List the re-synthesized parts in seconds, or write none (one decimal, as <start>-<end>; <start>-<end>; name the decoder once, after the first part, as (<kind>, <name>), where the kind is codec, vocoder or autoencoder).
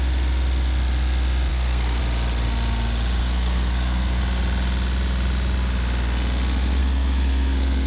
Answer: 1.5-2.0 (codec, SNAC); 3.2-4.2; 6.8-7.9